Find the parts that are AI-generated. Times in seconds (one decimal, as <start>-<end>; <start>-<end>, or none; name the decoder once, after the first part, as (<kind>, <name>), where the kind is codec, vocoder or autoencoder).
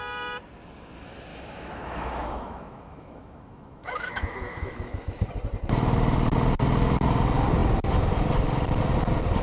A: 1.3-5.3 (autoencoder, DAC-VAE)